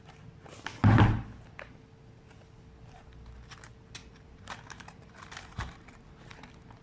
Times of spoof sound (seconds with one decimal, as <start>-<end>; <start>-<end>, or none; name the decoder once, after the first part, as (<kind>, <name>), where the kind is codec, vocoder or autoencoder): 4.0-6.0 (vocoder, BigVGAN v2)